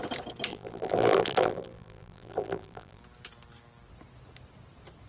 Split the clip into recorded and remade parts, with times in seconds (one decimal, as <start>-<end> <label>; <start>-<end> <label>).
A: 0.0-0.5 recorded; 0.5-3.0 remade; 3.0-5.1 recorded